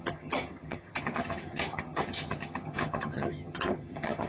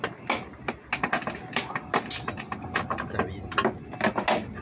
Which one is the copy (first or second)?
first